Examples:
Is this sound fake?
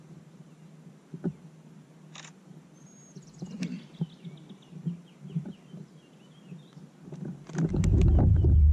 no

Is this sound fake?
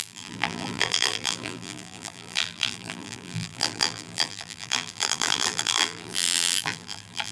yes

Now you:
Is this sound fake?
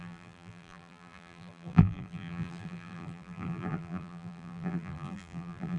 yes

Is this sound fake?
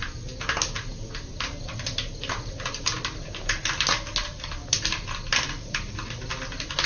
no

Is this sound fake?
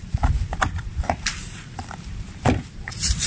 yes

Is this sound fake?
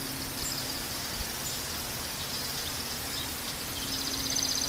yes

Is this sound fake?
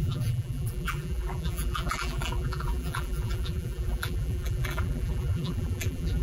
yes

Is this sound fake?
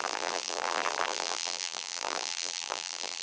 yes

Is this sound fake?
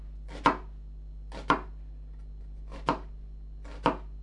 no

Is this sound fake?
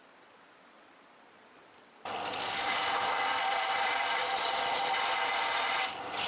yes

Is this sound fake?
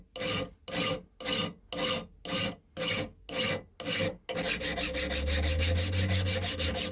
no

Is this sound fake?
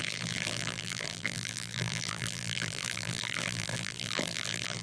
yes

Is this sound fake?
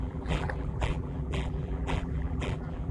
yes